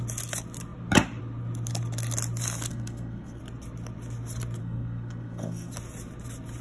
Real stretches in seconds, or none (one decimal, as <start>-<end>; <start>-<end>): 0.0-2.7; 3.4-4.6; 5.7-6.6